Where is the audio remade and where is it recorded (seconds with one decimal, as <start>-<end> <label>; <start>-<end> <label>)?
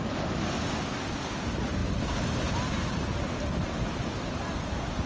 0.0-5.1 recorded